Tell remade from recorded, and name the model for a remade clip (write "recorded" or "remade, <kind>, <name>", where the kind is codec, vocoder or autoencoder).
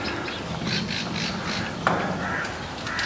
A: recorded